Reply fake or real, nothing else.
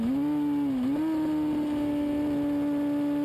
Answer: real